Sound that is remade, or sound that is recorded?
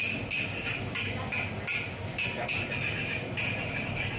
remade